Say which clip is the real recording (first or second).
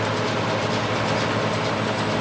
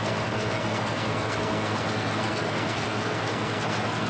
first